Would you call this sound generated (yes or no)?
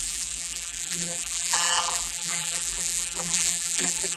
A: yes